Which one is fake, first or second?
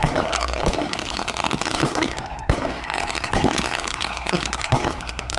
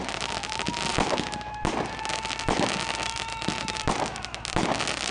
first